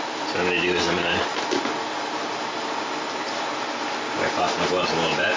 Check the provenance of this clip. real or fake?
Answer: real